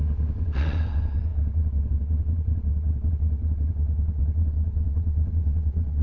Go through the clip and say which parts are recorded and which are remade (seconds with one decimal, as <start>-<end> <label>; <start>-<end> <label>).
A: 0.0-6.0 remade

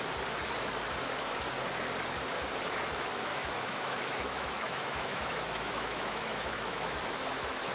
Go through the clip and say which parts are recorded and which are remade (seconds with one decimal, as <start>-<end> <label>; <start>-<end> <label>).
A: 0.0-3.3 recorded; 3.3-7.7 remade